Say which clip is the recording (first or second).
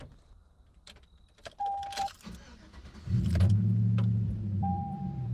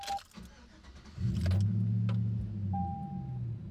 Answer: second